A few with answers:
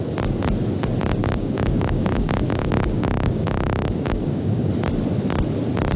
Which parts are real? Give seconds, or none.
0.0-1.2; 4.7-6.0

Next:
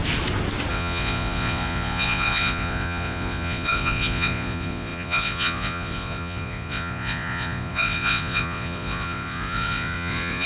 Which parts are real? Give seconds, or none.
0.0-0.7

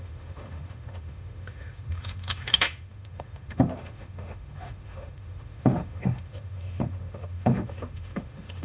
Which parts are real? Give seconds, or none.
none

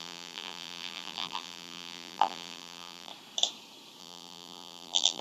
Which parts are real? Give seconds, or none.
3.1-4.0

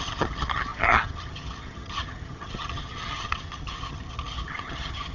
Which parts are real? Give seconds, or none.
none

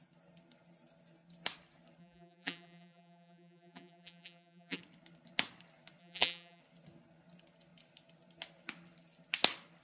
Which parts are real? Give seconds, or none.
0.0-2.0; 4.8-6.0; 6.6-9.8

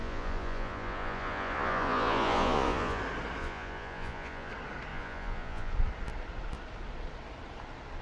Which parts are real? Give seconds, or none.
3.0-3.4; 4.5-4.9; 5.7-8.0